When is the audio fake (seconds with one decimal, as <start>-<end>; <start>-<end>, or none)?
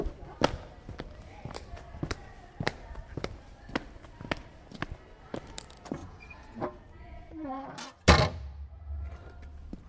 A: 6.0-7.3